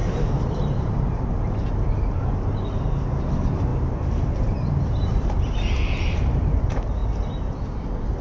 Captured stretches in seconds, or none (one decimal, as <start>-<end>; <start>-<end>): 2.8-3.7; 6.6-8.2